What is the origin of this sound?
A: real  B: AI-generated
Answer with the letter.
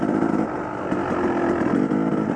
A